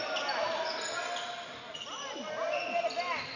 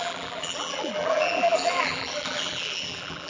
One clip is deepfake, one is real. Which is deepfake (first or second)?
second